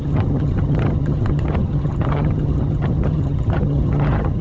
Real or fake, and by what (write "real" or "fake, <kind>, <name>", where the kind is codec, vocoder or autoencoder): fake, vocoder, HiFi-GAN